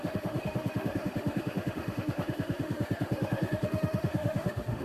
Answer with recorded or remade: remade